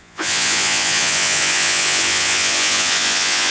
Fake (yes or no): yes